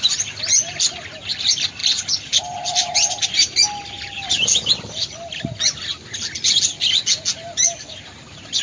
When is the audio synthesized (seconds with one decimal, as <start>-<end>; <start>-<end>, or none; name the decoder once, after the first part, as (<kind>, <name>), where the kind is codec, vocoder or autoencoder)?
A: none